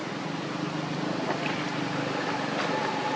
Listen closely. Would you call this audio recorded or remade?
recorded